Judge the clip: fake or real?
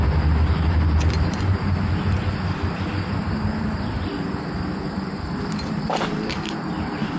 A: fake